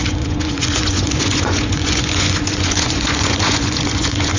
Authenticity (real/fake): fake